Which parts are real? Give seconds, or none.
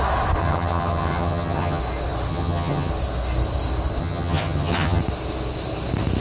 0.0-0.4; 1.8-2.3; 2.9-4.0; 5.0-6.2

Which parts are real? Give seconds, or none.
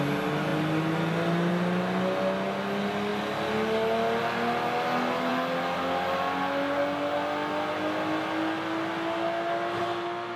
0.0-10.4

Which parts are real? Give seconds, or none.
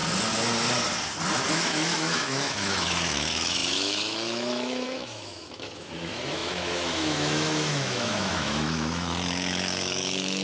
0.0-1.5